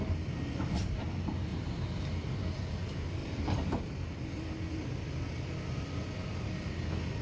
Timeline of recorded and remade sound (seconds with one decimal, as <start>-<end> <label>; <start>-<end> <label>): 0.0-1.5 recorded; 1.5-2.0 remade; 2.0-3.2 recorded; 3.2-3.8 remade; 3.8-7.2 recorded